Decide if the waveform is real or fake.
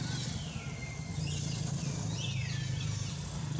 real